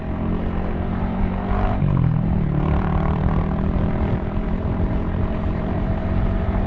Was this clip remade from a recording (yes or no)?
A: yes